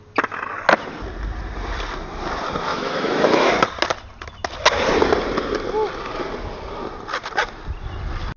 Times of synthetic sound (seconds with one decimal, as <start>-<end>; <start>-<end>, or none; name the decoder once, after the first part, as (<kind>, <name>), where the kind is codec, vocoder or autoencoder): 2.7-3.5 (autoencoder, DAC-VAE)